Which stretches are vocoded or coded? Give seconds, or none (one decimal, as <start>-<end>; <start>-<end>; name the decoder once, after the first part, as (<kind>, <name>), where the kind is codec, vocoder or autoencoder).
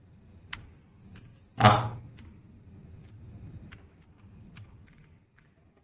none